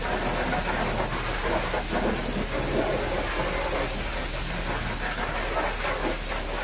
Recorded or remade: recorded